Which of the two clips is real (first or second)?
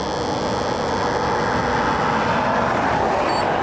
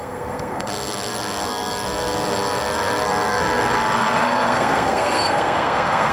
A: first